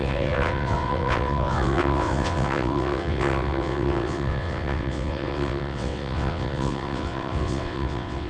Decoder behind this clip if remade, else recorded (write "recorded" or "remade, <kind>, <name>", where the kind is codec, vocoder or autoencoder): remade, vocoder, WaveNeXt